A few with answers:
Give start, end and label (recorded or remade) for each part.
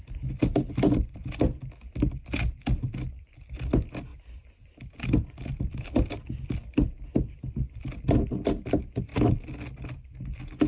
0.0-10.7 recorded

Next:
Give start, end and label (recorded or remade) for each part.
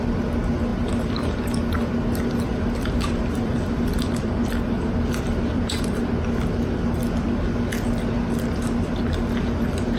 0.0-0.7 recorded; 0.7-1.4 remade; 1.4-2.5 recorded; 2.5-5.6 remade; 5.6-10.0 recorded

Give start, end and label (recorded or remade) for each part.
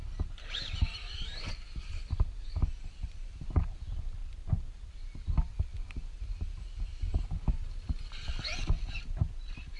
0.0-2.6 remade; 2.6-4.2 recorded; 4.2-4.9 remade; 4.9-6.9 recorded; 6.9-8.0 remade; 8.0-9.8 recorded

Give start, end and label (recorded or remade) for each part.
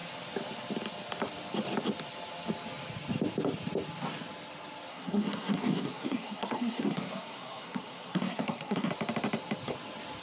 0.0-4.9 recorded; 4.9-8.9 remade; 8.9-10.2 recorded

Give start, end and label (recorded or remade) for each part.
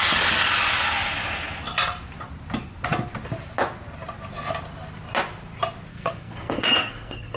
0.0-5.9 recorded; 5.9-7.4 remade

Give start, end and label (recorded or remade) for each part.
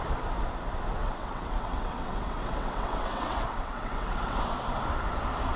0.0-1.0 recorded; 1.0-4.4 remade; 4.4-5.6 recorded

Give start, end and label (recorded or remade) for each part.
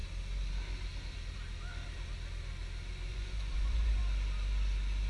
0.0-3.1 recorded; 3.1-4.0 remade; 4.0-5.1 recorded